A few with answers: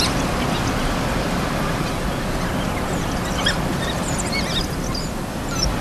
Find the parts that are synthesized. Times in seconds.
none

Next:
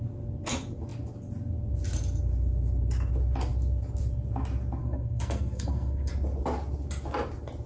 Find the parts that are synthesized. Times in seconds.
4.8-6.1 (codec, SNAC)

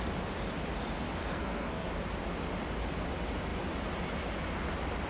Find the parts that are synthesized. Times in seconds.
1.2-1.9 (codec, SNAC)

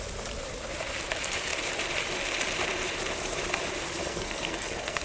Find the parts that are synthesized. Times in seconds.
4.0-5.0 (codec, SNAC)

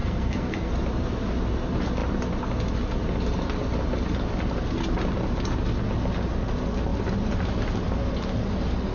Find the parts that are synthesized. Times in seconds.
0.0-0.7 (codec, SNAC)